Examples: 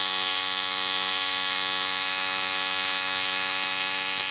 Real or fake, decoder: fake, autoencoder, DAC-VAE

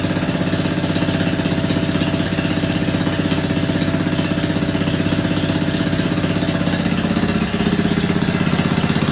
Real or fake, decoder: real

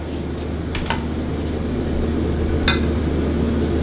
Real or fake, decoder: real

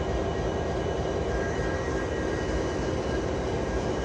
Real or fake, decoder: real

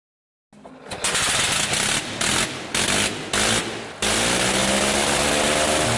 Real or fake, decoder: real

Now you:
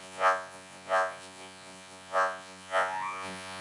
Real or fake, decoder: fake, vocoder, Vocos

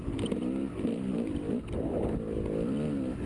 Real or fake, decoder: fake, vocoder, BigVGAN v2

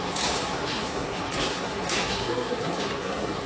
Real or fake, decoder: fake, codec, SNAC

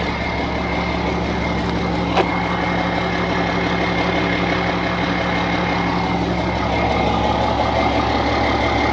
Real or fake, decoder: real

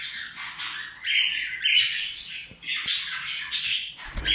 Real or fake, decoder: real